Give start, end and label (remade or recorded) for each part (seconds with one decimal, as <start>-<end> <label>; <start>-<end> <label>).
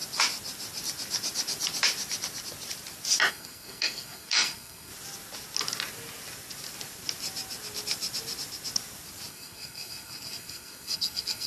0.0-3.3 recorded; 3.3-4.9 remade; 4.9-9.3 recorded; 9.3-11.5 remade